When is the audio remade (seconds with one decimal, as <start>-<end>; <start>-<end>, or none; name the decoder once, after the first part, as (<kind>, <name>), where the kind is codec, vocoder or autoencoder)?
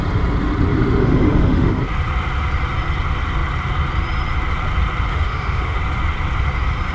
1.0-1.8 (autoencoder, DAC-VAE); 5.1-5.8